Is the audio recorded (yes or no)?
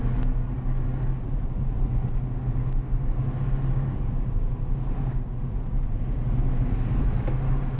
yes